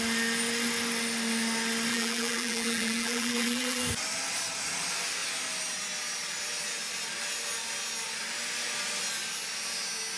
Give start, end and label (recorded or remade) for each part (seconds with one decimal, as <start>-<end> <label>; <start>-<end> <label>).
0.0-1.9 recorded; 1.9-3.8 remade; 3.8-10.2 recorded